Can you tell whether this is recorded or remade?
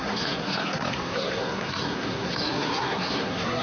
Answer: remade